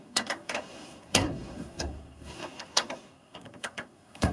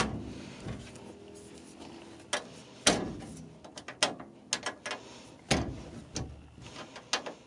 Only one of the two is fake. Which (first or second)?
first